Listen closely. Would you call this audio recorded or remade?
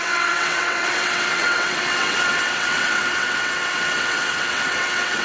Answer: remade